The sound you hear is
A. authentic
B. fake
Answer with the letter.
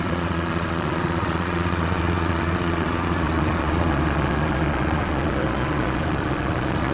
B